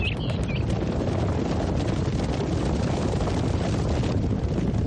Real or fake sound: real